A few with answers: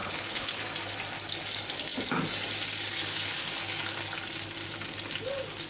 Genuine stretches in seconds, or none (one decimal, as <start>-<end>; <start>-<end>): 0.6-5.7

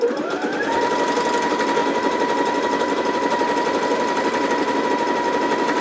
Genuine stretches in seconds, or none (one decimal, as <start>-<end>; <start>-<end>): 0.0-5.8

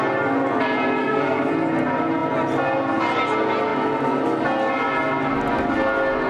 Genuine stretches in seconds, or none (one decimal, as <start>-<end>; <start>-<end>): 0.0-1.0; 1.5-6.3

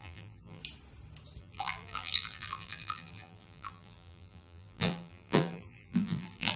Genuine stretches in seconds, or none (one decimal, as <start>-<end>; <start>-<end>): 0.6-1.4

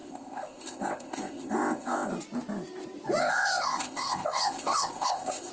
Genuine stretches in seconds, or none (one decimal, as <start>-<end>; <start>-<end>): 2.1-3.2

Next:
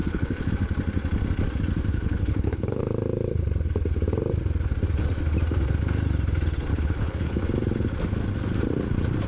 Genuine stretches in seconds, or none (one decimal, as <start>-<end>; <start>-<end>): 0.5-1.9; 2.8-6.7; 7.4-9.3